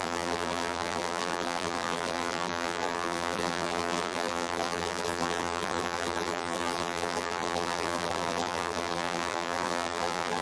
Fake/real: fake